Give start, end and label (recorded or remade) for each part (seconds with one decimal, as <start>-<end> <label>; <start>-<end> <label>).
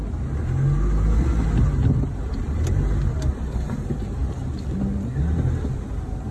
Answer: 0.0-6.3 recorded